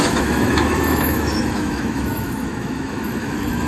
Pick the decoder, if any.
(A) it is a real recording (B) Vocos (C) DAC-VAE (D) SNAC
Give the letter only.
C